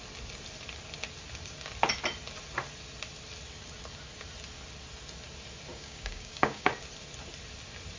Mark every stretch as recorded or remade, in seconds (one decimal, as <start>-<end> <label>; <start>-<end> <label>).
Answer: 0.0-5.7 recorded; 5.7-6.7 remade; 6.7-8.0 recorded